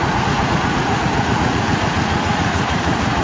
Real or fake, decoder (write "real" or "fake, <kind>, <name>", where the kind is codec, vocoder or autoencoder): fake, vocoder, Vocos